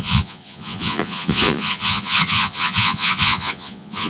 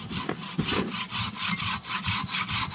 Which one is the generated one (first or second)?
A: first